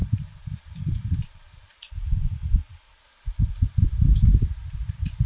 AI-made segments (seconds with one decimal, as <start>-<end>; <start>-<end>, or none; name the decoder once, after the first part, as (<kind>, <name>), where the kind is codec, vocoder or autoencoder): 0.0-3.0 (vocoder, BigVGAN v2)